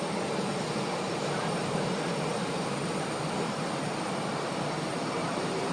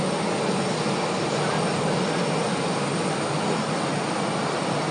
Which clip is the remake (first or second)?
first